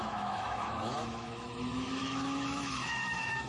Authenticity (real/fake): fake